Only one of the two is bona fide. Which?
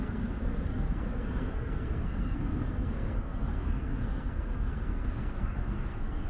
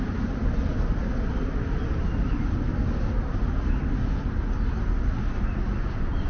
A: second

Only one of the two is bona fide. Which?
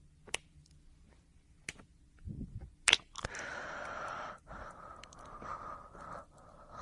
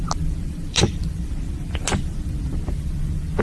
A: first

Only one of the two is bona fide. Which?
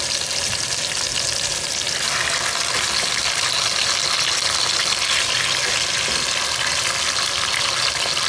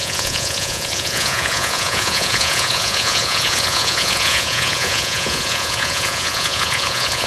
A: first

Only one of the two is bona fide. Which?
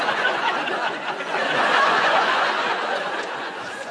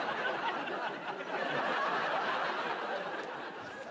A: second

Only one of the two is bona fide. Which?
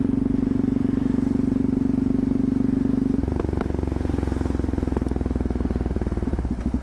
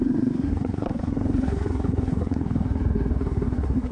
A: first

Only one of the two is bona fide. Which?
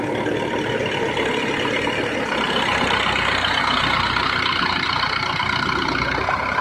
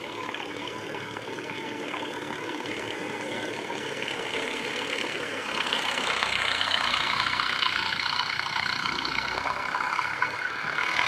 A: first